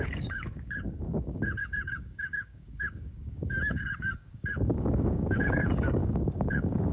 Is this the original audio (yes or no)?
no